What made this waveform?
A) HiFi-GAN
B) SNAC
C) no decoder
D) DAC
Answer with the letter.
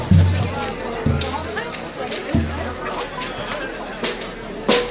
C